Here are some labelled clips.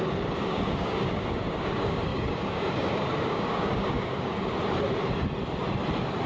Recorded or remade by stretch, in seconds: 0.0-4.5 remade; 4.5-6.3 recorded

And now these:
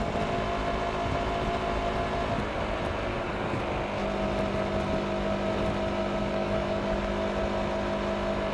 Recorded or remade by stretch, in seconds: 0.0-3.1 recorded; 3.1-3.6 remade; 3.6-6.2 recorded; 6.2-7.1 remade; 7.1-8.5 recorded